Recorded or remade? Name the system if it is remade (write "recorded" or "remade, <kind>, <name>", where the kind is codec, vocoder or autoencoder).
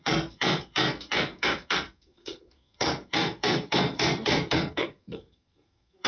remade, codec, SNAC